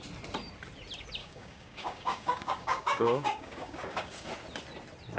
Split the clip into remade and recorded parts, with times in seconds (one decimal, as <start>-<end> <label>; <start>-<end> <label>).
0.0-1.2 recorded; 1.2-4.3 remade; 4.3-5.2 recorded